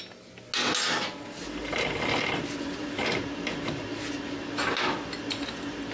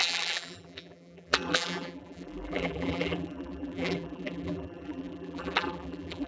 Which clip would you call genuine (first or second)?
first